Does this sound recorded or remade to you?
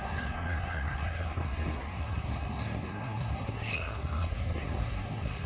remade